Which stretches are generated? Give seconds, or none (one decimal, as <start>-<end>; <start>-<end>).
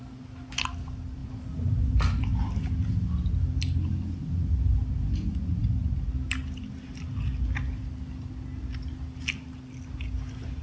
none